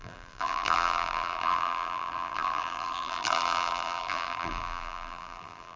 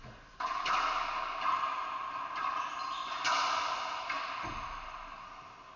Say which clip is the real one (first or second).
second